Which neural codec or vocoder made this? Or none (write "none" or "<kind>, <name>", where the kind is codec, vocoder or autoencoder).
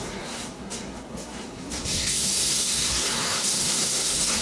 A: codec, SNAC